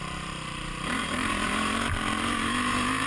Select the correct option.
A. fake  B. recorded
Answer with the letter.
A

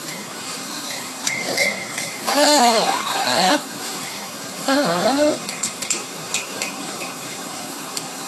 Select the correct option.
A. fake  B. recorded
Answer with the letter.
A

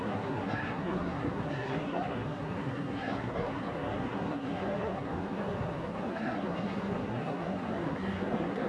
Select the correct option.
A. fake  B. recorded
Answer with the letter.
A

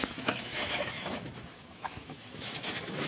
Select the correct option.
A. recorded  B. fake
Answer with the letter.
B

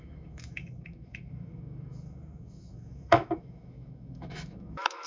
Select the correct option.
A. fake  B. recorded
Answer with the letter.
A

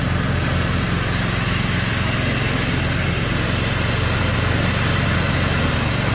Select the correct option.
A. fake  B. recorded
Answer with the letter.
B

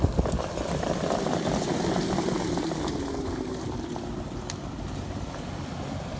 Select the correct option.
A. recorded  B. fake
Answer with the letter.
A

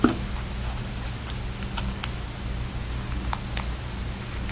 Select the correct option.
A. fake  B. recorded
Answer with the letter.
B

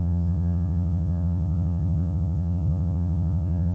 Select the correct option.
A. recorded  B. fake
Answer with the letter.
B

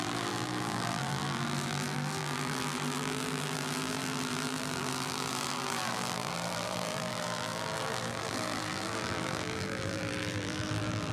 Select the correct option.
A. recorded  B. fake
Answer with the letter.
B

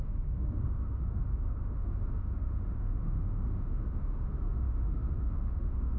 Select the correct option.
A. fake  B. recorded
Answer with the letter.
A